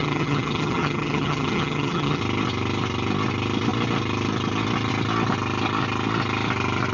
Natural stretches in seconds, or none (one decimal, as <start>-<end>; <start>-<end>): 2.2-6.9